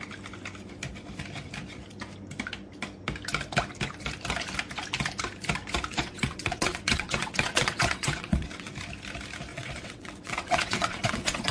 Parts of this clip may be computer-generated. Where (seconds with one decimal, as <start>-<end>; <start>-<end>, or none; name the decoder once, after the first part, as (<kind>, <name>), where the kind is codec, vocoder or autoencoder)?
5.9-8.7 (vocoder, WaveNeXt); 9.5-11.5